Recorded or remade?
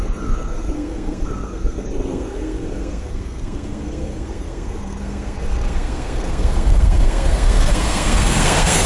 remade